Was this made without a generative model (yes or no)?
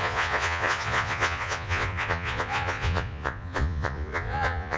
no